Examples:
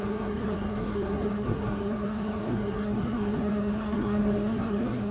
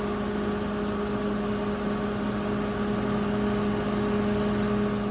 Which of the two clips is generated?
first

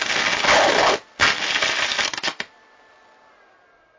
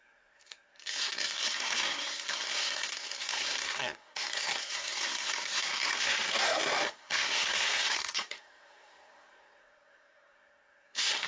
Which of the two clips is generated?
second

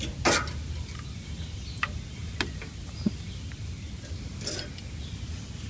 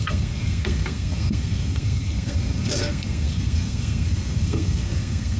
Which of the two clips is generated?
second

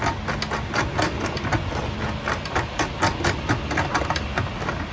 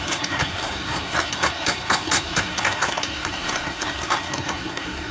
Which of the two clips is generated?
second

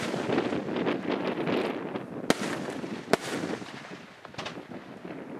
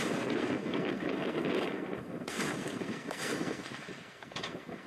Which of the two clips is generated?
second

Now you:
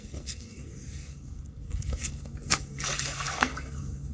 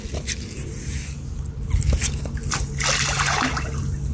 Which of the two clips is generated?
first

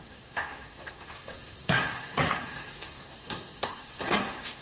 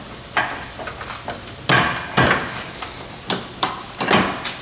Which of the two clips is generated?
first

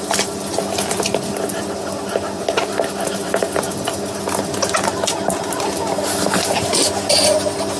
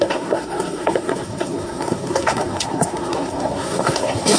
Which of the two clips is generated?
second